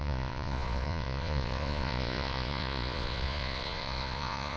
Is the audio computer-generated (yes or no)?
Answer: yes